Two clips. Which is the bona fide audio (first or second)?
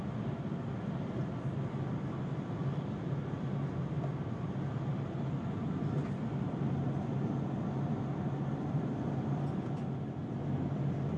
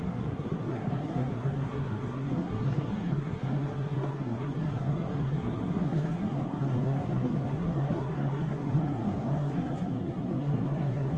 first